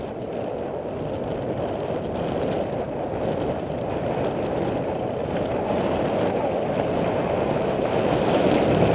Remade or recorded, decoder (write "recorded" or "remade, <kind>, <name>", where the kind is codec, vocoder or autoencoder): recorded